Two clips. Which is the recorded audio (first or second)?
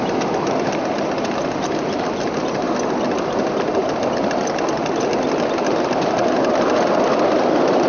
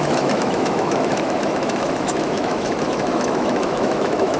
first